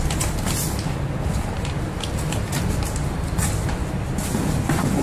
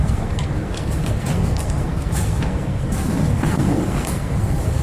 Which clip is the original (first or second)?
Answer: first